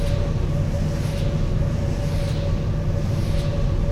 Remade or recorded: recorded